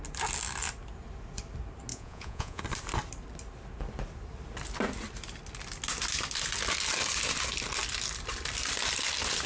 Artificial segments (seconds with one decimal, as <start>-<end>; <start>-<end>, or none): 1.9-2.6